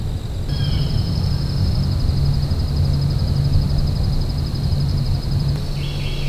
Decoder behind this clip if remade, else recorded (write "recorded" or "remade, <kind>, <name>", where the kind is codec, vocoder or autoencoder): recorded